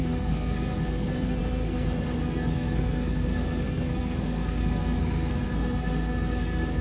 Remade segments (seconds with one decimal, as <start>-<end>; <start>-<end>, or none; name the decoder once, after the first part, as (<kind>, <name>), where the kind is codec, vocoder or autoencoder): 0.0-6.8 (codec, SNAC)